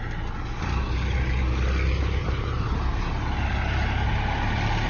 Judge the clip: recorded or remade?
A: recorded